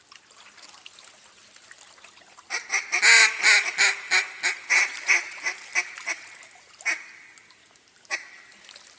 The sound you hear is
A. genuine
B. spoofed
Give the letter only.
A